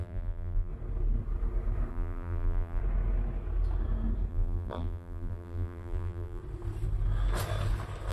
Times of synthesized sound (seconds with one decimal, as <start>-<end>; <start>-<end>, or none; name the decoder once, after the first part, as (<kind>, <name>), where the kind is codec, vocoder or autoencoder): 0.0-0.7 (vocoder, BigVGAN v2); 1.9-2.8; 4.3-6.4